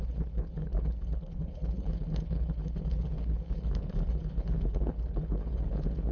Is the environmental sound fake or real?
fake